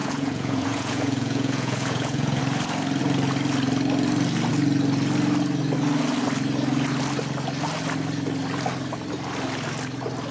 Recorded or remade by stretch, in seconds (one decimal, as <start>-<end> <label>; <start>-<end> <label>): 0.0-2.4 remade; 2.4-10.3 recorded